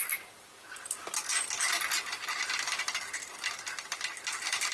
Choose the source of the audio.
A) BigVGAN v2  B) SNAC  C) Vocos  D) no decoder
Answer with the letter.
D